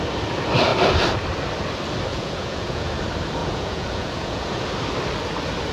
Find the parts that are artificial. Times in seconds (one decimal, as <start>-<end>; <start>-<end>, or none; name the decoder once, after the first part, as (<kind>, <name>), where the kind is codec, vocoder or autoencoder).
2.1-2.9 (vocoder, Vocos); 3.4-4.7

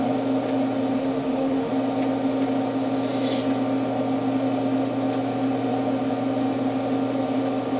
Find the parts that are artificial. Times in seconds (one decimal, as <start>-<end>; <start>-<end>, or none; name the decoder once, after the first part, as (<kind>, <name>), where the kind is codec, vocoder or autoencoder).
1.0-1.7 (autoencoder, DAC-VAE)

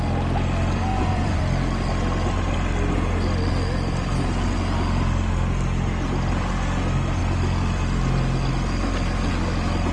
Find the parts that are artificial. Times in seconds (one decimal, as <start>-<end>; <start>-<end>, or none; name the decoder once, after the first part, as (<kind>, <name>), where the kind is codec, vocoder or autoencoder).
0.9-1.4 (vocoder, Vocos)